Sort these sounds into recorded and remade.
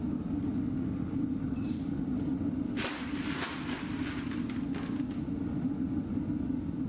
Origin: recorded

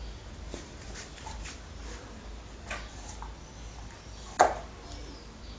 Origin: recorded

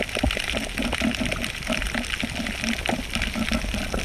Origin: recorded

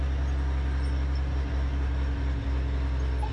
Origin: recorded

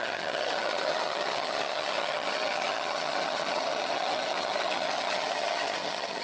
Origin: remade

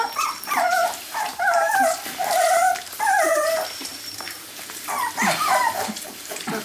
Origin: remade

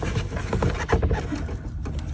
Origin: recorded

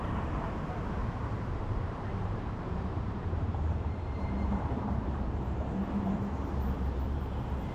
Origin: remade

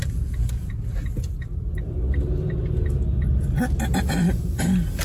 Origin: recorded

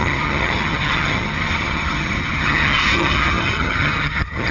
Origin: remade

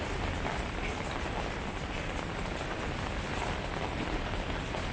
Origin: recorded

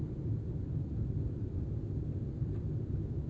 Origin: recorded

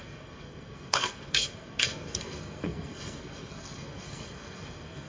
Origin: remade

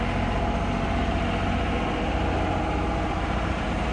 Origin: recorded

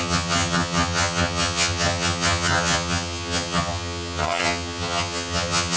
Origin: remade